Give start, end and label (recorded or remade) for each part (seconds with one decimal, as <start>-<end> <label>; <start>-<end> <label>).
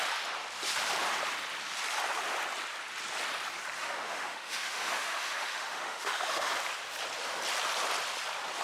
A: 0.0-3.8 recorded; 3.8-6.5 remade; 6.5-8.6 recorded